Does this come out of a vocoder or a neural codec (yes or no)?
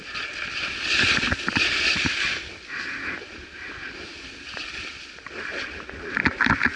no